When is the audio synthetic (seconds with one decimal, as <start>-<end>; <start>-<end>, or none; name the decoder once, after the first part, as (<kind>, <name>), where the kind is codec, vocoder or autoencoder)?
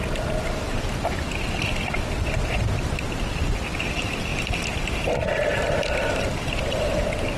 2.8-7.4 (vocoder, BigVGAN v2)